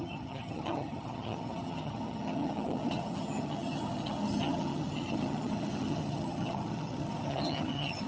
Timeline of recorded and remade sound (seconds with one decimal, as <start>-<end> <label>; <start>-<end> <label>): 0.0-8.1 remade